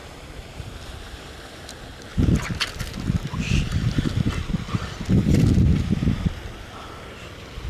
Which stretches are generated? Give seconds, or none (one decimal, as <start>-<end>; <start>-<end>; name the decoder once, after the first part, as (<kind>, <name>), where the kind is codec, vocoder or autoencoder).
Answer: 0.0-1.7 (vocoder, BigVGAN v2)